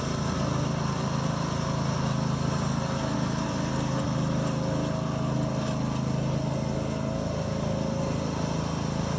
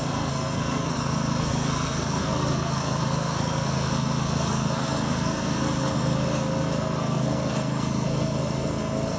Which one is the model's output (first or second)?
second